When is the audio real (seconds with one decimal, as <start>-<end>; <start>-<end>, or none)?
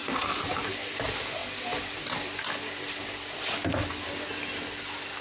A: 0.0-5.2